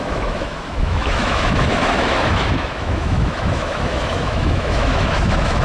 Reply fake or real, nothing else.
fake